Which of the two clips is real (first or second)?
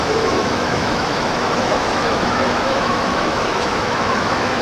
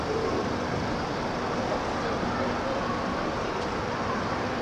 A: second